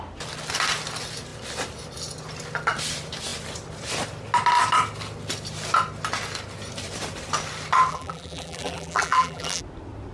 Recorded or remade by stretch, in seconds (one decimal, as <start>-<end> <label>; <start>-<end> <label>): 0.0-7.9 recorded; 7.9-9.6 remade; 9.6-10.1 recorded